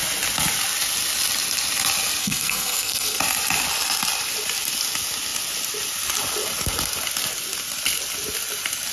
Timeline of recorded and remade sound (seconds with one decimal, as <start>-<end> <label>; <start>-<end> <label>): 0.0-2.2 recorded; 2.2-3.2 remade; 3.2-8.9 recorded